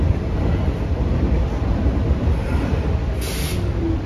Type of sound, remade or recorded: recorded